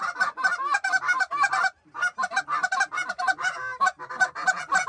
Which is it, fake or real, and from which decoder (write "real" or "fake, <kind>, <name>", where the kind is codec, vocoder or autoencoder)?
real